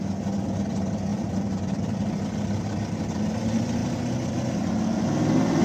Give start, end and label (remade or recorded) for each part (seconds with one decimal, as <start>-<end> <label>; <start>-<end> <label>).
0.0-1.1 recorded; 1.1-1.8 remade; 1.8-5.6 recorded